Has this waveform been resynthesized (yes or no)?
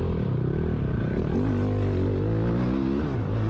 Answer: no